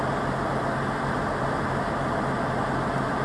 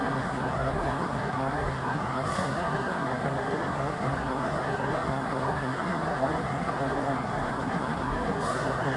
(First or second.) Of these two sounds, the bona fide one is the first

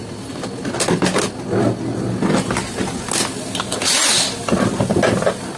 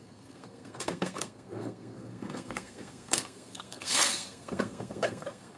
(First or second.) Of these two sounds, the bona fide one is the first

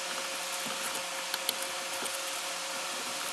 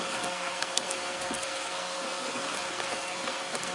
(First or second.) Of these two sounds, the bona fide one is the first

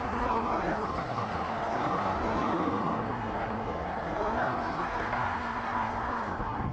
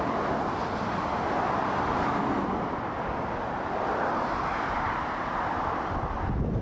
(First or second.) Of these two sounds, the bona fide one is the second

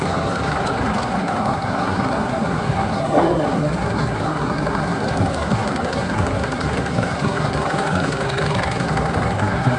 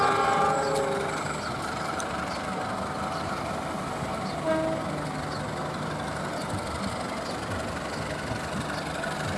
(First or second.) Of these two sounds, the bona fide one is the second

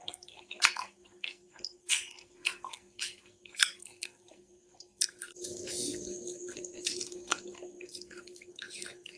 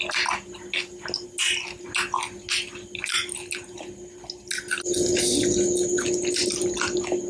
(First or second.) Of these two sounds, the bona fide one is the second